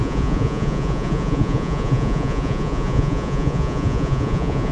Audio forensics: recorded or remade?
remade